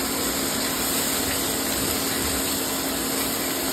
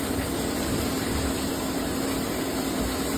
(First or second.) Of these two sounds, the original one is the first